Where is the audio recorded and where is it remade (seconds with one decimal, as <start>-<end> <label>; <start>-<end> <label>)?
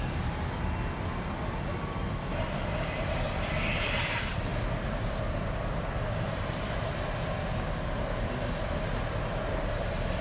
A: 0.0-4.5 remade; 4.5-9.6 recorded; 9.6-10.2 remade